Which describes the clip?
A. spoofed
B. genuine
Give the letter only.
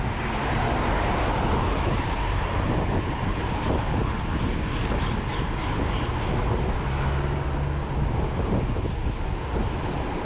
B